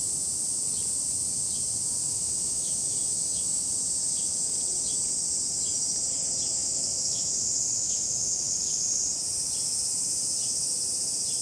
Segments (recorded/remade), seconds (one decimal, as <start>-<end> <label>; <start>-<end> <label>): 0.0-2.0 recorded; 2.0-3.7 remade; 3.7-6.6 recorded; 6.6-9.0 remade; 9.0-11.4 recorded